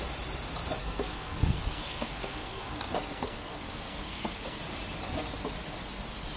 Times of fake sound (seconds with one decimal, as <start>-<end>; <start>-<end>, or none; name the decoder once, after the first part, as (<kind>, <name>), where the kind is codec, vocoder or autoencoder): 0.8-4.6 (codec, SNAC)